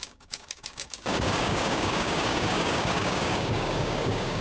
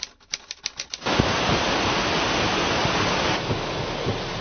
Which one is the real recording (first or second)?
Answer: second